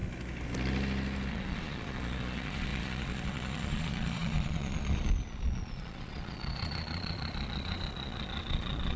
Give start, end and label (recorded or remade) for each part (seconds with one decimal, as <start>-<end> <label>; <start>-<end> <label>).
0.0-1.3 recorded; 1.3-9.0 remade